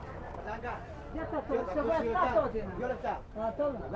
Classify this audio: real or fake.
real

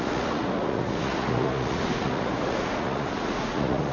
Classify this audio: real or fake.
fake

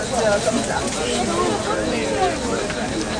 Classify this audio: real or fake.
real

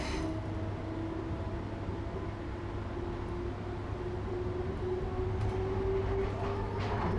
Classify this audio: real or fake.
real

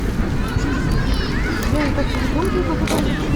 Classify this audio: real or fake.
real